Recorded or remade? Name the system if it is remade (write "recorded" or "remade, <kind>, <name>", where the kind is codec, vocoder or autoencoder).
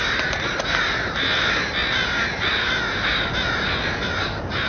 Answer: recorded